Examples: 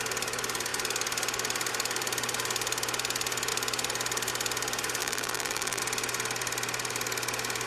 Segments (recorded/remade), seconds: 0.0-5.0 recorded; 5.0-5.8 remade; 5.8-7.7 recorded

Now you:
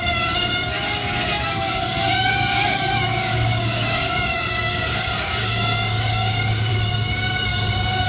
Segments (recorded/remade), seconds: 0.0-8.1 remade